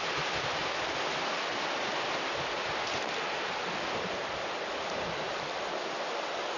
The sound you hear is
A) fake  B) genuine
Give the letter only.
B